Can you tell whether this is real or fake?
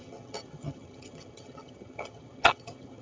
fake